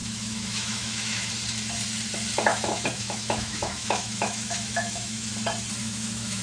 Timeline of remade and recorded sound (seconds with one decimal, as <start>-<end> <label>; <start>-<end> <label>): 0.0-1.3 remade; 1.3-2.5 recorded; 2.5-5.3 remade; 5.3-5.8 recorded; 5.8-6.4 remade